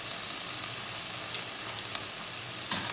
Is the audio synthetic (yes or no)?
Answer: no